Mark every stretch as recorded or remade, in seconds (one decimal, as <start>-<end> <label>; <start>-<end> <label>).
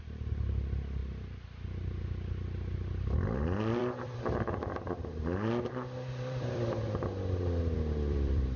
0.0-3.8 recorded; 3.8-4.6 remade; 4.6-5.7 recorded; 5.7-8.6 remade